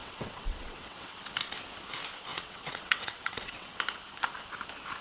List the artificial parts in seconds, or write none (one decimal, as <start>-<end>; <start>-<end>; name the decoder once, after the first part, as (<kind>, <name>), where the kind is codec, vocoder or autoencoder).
0.0-1.2 (vocoder, WaveNeXt); 2.3-3.8